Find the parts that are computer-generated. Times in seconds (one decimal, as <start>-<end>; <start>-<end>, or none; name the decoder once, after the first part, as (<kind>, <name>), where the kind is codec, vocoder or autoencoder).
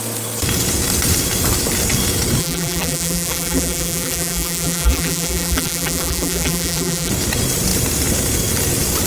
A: 2.4-7.1 (vocoder, BigVGAN v2)